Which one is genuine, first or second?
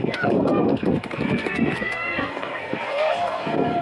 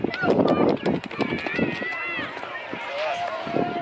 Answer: second